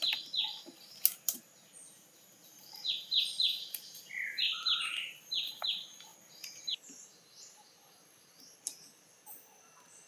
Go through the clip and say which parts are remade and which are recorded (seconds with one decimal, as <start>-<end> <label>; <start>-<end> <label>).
0.0-1.8 recorded; 1.8-5.6 remade; 5.6-10.1 recorded